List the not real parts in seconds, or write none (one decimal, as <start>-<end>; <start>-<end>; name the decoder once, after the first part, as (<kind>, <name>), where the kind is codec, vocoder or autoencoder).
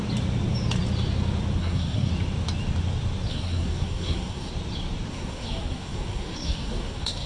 1.6-2.1 (codec, SNAC); 3.3-4.5; 5.1-7.3